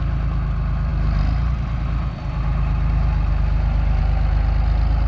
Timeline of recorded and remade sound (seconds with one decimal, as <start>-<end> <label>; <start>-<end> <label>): 0.0-5.1 recorded